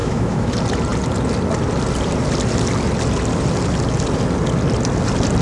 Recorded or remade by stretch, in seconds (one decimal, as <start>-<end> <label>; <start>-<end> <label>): 0.0-0.5 remade; 0.5-5.4 recorded